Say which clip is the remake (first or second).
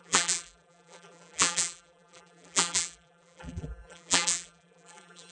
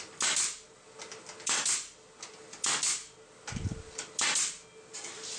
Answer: first